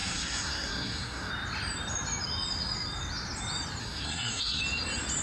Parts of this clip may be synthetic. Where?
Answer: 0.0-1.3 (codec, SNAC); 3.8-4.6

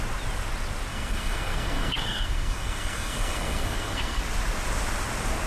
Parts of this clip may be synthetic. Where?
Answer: 0.9-4.2 (codec, SNAC)

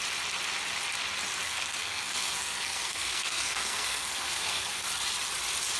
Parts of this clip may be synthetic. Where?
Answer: 1.4-4.9 (codec, SNAC)

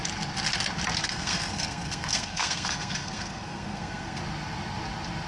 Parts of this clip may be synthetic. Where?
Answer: 1.0-4.2 (codec, SNAC)

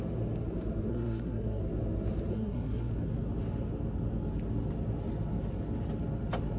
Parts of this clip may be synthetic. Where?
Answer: 0.9-1.6 (codec, SNAC); 2.3-2.9

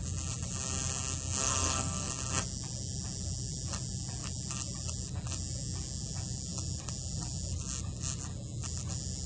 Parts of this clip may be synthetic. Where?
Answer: 1.4-2.1 (codec, SNAC)

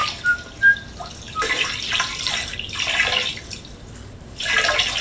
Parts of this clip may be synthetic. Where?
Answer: none